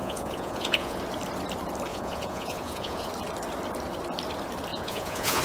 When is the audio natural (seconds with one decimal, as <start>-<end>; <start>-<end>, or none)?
1.0-1.9; 3.1-4.7